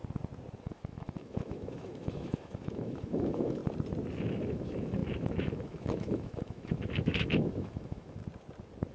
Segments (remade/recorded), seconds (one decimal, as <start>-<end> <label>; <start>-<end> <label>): 0.0-0.6 recorded; 0.6-3.6 remade; 3.6-4.2 recorded; 4.2-8.2 remade; 8.2-8.9 recorded